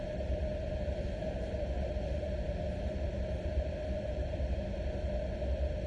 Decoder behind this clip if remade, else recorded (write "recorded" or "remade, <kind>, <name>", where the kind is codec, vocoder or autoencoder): remade, vocoder, BigVGAN v2